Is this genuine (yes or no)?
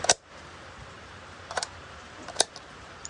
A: no